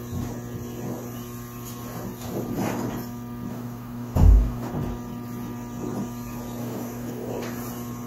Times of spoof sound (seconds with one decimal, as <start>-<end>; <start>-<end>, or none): 3.5-4.7; 6.6-7.3